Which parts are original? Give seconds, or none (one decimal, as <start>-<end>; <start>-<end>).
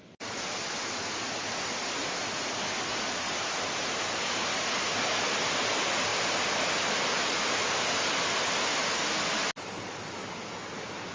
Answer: 0.0-11.1